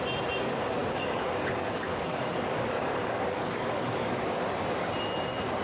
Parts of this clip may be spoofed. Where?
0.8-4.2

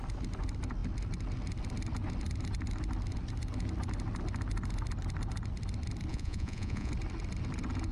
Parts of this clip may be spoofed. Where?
6.1-6.9

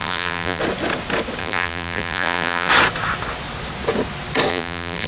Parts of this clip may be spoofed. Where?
0.0-0.6; 1.4-2.7; 4.5-5.1

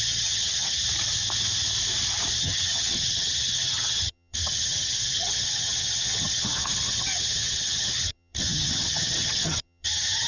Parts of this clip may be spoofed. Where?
0.0-0.8; 2.4-10.3

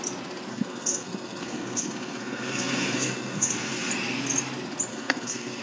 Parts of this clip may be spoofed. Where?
0.5-3.9; 4.9-5.6

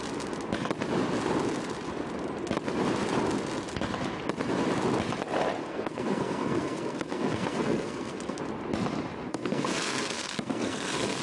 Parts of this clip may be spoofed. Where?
5.6-8.4; 9.3-11.2

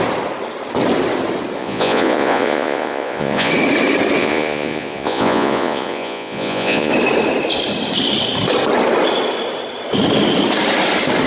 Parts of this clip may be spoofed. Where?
1.6-3.5; 4.2-6.9